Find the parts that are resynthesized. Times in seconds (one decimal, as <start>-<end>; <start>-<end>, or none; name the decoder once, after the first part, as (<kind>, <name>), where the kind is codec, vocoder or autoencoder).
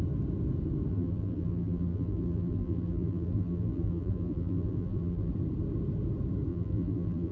0.9-5.3 (vocoder, BigVGAN v2); 6.5-7.3